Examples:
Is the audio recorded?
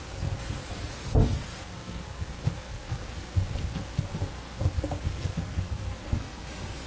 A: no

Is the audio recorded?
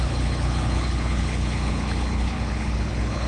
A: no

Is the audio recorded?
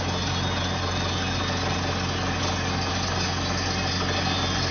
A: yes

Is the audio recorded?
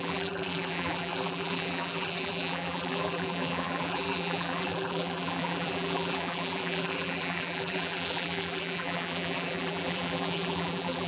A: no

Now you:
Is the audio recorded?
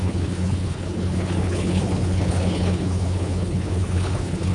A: no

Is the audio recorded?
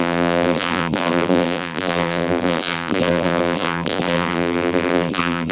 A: no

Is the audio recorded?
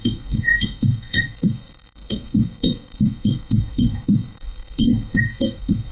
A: no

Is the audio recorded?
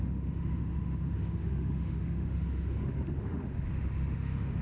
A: no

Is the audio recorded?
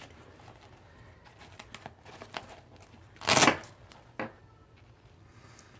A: yes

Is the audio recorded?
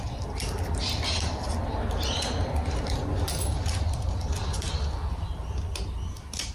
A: yes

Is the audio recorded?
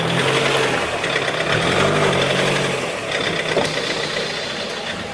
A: yes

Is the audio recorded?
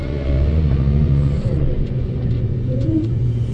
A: no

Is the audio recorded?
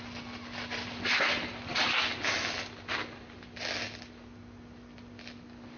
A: yes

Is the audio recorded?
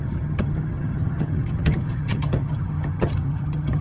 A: no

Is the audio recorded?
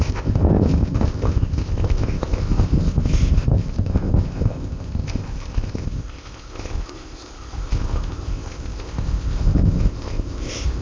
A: no